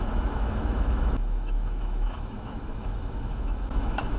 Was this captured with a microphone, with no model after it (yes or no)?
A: no